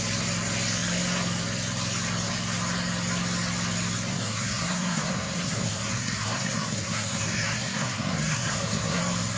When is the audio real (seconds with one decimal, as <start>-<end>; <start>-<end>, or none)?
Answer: 0.0-4.1; 9.0-9.4